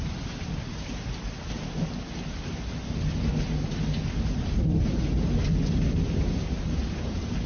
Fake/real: real